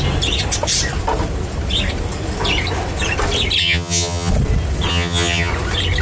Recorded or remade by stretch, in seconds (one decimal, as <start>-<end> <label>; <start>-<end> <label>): 0.0-3.6 recorded; 3.6-4.3 remade; 4.3-4.9 recorded; 4.9-5.5 remade; 5.5-6.0 recorded

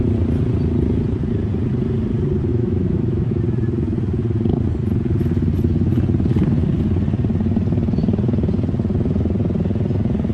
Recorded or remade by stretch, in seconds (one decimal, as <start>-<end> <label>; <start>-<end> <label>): 0.0-2.5 recorded; 2.5-3.4 remade; 3.4-10.3 recorded

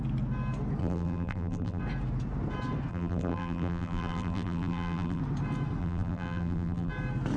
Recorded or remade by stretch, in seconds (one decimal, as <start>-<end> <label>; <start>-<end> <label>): 0.0-0.8 recorded; 0.8-1.8 remade; 1.8-2.9 recorded; 2.9-5.2 remade; 5.2-5.8 recorded; 5.8-6.9 remade; 6.9-7.4 recorded